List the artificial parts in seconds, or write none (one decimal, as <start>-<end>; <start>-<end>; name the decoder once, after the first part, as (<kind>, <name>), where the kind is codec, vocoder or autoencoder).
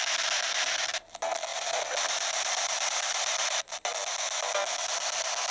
1.5-3.9 (vocoder, BigVGAN v2)